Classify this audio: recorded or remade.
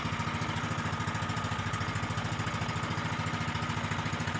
recorded